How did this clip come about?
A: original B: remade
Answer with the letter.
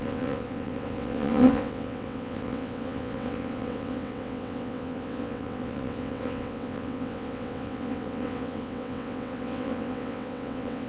B